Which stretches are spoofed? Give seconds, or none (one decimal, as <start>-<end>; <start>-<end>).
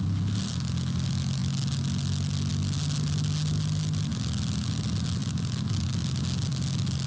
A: none